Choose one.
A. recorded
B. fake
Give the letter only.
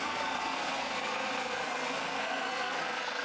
B